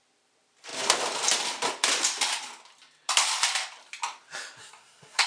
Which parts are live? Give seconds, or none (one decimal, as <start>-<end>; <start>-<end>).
0.0-4.6

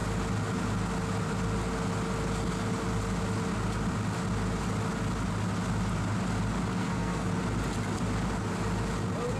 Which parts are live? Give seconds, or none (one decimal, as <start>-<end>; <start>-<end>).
0.0-6.7; 7.3-9.4

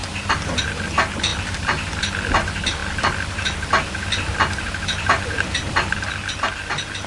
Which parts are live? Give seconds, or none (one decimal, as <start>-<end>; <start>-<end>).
0.0-1.3; 2.3-2.8; 6.1-7.1

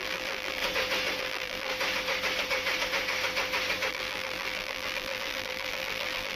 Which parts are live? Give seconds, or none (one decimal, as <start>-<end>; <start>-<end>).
0.6-1.2; 1.7-3.9